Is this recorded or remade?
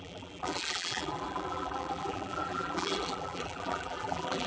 remade